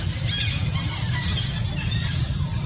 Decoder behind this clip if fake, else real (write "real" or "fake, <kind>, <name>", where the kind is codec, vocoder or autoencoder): real